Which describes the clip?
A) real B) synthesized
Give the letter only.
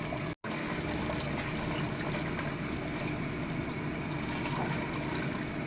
A